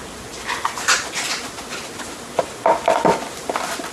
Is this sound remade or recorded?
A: recorded